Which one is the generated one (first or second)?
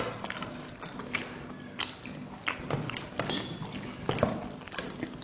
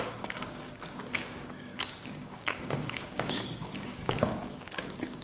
second